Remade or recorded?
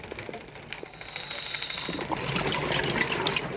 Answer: recorded